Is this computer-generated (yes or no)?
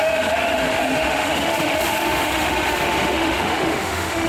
yes